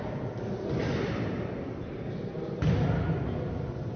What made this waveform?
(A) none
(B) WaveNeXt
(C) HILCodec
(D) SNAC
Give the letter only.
A